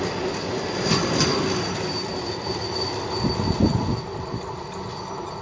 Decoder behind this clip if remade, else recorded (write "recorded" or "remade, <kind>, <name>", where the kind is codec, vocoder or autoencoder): recorded